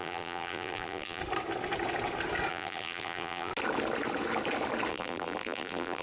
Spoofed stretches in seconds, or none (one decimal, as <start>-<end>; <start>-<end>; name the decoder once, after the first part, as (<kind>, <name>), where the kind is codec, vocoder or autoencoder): 0.0-1.2 (vocoder, BigVGAN v2); 2.5-3.5; 4.9-6.0

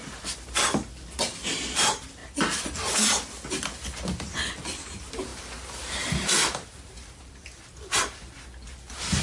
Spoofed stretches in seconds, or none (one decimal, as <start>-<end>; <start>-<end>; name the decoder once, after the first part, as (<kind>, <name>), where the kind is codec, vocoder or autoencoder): none

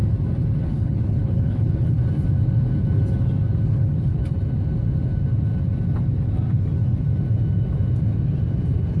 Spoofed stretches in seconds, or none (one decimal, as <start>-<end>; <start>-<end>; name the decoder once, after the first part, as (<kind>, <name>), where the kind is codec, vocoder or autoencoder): 0.6-2.0 (codec, HILCodec); 3.7-4.2

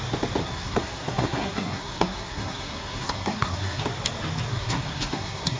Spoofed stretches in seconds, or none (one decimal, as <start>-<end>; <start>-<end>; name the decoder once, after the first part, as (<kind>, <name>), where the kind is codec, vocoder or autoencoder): 0.4-3.8 (codec, SNAC); 4.5-5.6

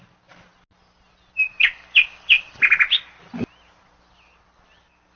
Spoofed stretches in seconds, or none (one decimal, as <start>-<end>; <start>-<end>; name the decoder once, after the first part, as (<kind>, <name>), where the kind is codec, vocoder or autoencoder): none

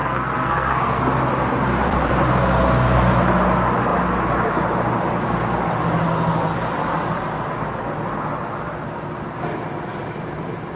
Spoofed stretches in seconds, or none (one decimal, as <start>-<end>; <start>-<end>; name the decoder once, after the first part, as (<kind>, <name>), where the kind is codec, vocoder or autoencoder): 0.0-1.0 (codec, SNAC)

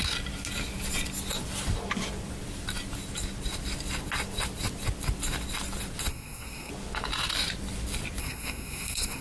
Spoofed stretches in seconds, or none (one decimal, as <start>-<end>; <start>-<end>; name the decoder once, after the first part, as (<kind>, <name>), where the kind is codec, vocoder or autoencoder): 6.1-6.7 (codec, SNAC); 8.2-9.2

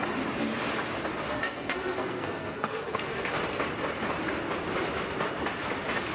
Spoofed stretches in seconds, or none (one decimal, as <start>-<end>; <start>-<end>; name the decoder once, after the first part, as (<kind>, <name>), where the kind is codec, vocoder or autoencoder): 1.3-3.3 (codec, SNAC)